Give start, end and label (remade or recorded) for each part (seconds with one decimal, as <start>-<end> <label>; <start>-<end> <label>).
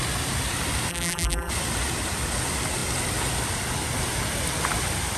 0.0-0.9 recorded; 0.9-1.5 remade; 1.5-5.2 recorded